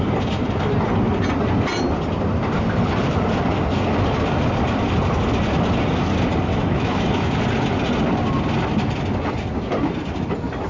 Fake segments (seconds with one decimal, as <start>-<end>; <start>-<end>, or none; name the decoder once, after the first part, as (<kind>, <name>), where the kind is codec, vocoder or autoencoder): 6.5-7.3 (autoencoder, DAC-VAE)